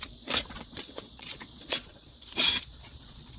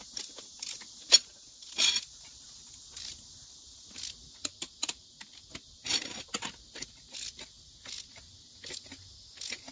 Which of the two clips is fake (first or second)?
first